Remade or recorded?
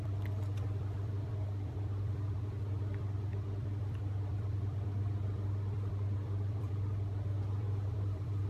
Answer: remade